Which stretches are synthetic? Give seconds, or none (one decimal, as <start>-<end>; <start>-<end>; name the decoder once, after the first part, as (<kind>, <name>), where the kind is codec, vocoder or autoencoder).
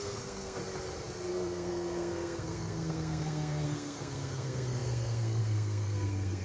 0.0-0.6 (codec, SNAC); 1.3-6.4